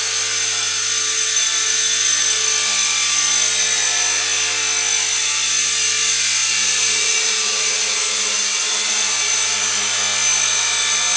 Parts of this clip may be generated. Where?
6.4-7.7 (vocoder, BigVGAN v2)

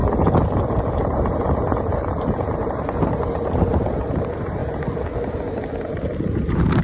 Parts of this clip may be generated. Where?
0.6-4.6 (vocoder, BigVGAN v2); 6.2-6.8